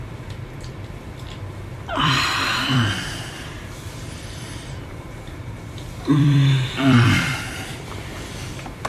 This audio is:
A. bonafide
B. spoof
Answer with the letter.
B